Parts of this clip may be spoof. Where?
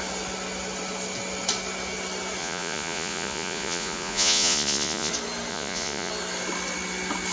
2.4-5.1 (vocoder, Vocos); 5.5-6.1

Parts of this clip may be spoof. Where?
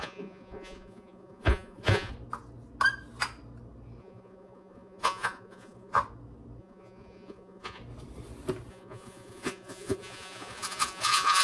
0.0-2.1 (vocoder, Vocos); 4.0-6.0; 6.6-7.8; 8.7-11.4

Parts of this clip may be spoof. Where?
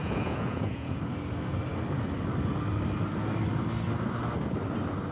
0.0-1.0 (vocoder, Vocos)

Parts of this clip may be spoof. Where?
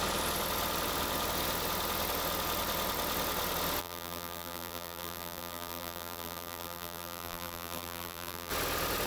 3.8-8.5 (vocoder, BigVGAN v2)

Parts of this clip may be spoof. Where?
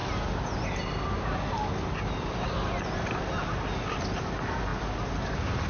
none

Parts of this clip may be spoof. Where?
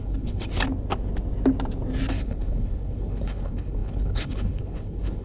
0.0-0.5 (codec, HILCodec); 2.1-5.2